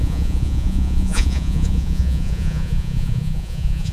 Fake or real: fake